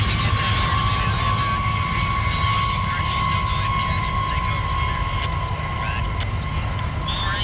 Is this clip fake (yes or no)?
no